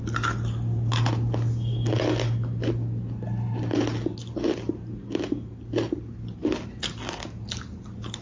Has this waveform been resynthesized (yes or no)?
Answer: no